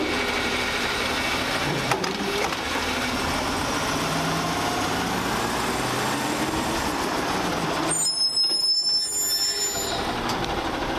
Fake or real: real